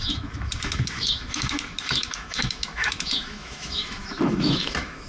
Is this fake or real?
fake